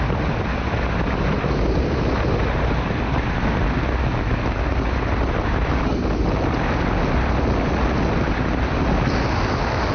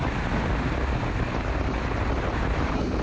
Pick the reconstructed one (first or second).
second